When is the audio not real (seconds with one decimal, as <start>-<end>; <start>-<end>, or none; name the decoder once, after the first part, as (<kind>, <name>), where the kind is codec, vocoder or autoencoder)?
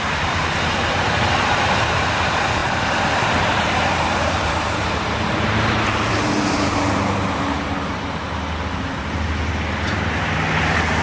2.6-6.1 (vocoder, BigVGAN v2)